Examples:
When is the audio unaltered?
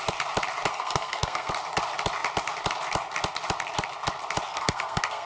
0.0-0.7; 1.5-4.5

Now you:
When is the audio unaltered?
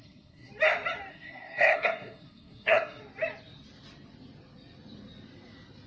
0.5-1.1; 3.0-5.9